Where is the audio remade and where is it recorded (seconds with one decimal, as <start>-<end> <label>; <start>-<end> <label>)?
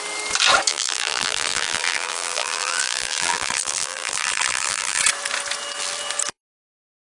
0.0-0.7 recorded; 0.7-5.0 remade; 5.0-7.2 recorded